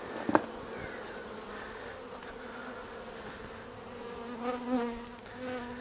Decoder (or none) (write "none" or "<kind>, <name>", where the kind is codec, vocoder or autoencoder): none